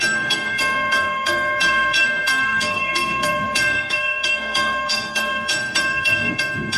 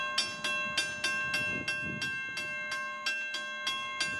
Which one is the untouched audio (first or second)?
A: second